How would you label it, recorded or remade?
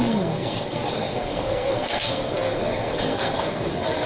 remade